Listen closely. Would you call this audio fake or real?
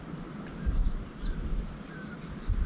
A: real